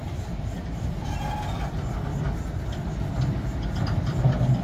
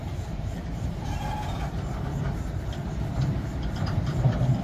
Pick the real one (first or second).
first